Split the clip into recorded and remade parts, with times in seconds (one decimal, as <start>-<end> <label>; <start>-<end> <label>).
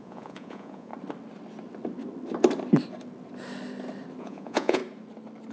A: 0.0-0.9 remade; 0.9-4.2 recorded; 4.2-4.8 remade; 4.8-5.5 recorded